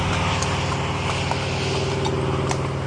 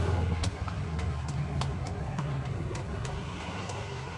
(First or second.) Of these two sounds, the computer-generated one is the second